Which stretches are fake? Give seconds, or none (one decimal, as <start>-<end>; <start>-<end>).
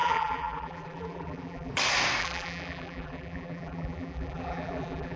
0.0-1.7; 2.2-5.2